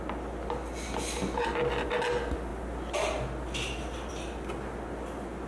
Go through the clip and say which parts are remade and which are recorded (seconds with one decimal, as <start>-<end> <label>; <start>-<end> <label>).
0.0-5.5 recorded